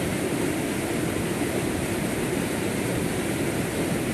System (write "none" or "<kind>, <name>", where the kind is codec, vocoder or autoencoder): none